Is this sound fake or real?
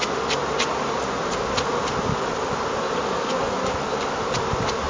real